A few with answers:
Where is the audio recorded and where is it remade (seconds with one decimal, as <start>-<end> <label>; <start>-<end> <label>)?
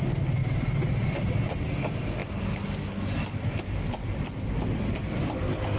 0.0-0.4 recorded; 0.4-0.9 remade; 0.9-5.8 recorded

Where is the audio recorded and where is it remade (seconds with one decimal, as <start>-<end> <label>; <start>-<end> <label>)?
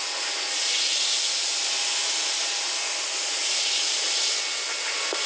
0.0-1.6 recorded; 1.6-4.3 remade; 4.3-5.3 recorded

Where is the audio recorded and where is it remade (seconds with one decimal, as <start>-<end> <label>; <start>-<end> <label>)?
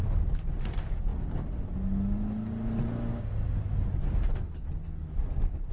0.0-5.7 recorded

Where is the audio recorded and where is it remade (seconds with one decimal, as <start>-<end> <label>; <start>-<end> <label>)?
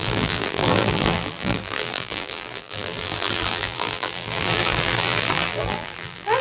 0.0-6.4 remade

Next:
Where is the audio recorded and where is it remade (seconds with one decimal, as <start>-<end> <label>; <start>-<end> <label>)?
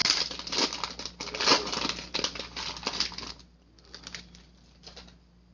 0.0-5.5 recorded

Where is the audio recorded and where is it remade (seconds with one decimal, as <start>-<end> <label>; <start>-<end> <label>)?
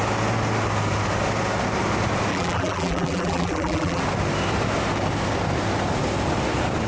0.0-2.3 recorded; 2.3-4.0 remade; 4.0-6.9 recorded